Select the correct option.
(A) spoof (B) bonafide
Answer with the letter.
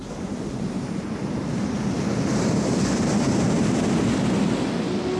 B